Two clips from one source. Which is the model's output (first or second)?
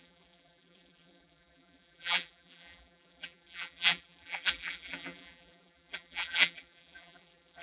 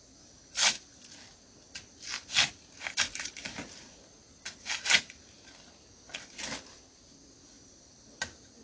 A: first